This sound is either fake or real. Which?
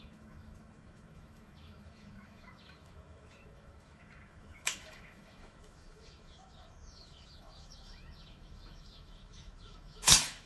fake